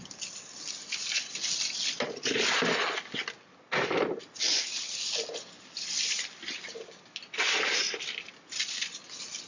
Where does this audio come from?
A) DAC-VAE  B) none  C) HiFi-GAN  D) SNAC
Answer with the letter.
B